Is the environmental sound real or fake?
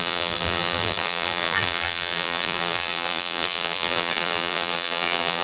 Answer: fake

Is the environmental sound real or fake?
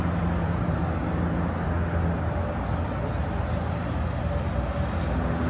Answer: real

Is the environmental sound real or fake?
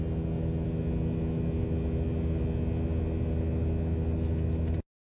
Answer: real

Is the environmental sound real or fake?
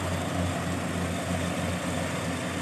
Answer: real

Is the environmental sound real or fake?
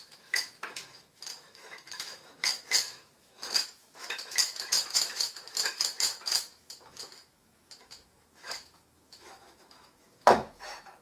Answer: fake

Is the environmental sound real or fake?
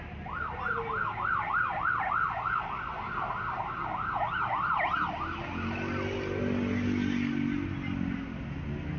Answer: real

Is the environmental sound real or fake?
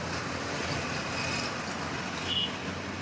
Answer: real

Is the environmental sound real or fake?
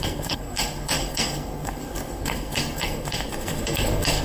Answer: fake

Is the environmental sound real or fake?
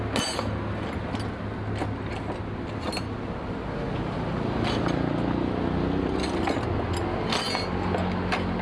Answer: real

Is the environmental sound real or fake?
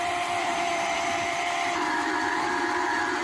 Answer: fake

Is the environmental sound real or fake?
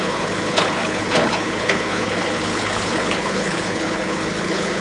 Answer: fake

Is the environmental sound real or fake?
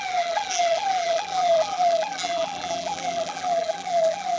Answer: fake